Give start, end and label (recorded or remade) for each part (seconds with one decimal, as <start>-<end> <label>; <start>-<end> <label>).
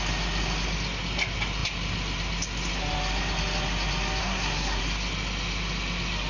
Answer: 0.0-4.2 recorded; 4.2-4.8 remade; 4.8-6.3 recorded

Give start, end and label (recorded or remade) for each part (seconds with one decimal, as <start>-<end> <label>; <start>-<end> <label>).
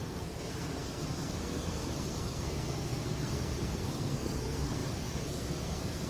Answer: 0.0-6.1 remade